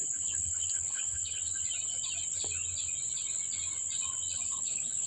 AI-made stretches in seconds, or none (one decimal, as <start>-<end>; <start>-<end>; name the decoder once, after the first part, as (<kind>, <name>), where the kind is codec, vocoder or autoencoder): 0.0-1.4 (codec, HILCodec); 4.5-5.1